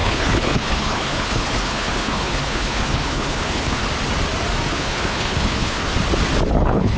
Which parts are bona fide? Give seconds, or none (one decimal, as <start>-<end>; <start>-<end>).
3.8-4.7; 5.9-6.5